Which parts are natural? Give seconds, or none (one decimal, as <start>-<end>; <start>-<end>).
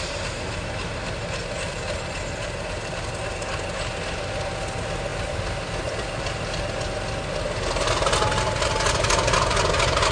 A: 0.0-10.1